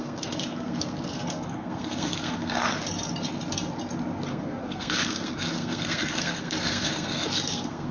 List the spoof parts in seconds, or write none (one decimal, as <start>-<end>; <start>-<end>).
0.0-2.8; 4.3-7.9